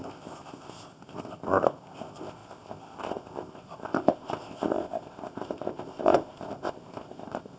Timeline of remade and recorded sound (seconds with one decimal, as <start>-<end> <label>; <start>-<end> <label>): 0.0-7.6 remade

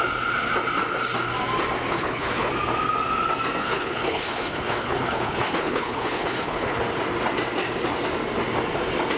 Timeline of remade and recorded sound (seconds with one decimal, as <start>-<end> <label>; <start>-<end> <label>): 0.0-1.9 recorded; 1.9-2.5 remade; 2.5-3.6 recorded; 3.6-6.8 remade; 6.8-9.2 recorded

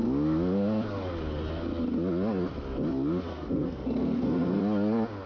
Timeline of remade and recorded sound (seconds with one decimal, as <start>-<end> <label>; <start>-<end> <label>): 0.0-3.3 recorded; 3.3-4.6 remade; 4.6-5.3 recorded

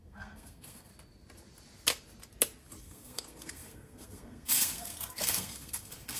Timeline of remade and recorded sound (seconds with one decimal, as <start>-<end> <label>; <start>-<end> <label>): 0.0-0.9 remade; 0.9-2.8 recorded; 2.8-6.2 remade

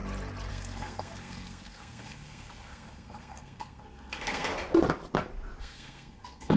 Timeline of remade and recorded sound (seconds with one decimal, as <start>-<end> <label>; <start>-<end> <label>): 0.0-0.5 recorded; 0.5-4.5 remade; 4.5-5.6 recorded; 5.6-6.6 remade

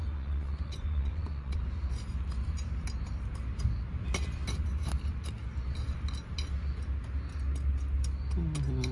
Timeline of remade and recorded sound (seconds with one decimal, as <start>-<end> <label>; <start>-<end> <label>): 0.0-1.6 remade; 1.6-8.9 recorded

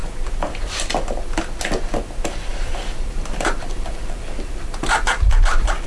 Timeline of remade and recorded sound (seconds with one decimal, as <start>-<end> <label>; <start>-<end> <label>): 0.0-2.5 recorded; 2.5-5.9 remade